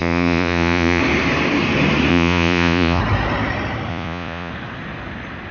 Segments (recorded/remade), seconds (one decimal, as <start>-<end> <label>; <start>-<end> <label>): 0.0-1.0 remade; 1.0-2.1 recorded; 2.1-3.0 remade; 3.0-3.9 recorded; 3.9-4.5 remade; 4.5-5.5 recorded